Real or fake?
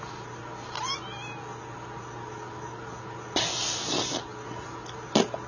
real